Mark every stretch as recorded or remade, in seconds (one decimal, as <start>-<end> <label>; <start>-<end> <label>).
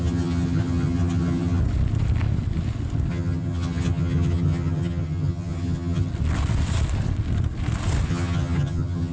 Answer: 0.0-1.6 remade; 1.6-3.1 recorded; 3.1-6.1 remade; 6.1-8.1 recorded; 8.1-9.1 remade